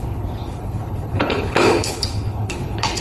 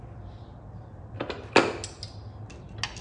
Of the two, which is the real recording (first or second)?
second